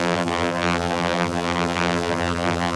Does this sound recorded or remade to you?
remade